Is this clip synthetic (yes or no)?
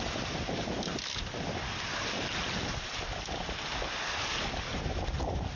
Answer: no